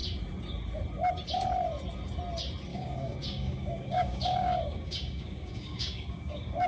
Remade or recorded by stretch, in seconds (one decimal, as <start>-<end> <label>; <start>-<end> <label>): 0.0-2.7 recorded; 2.7-6.7 remade